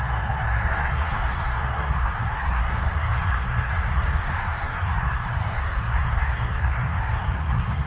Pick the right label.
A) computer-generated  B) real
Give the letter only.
A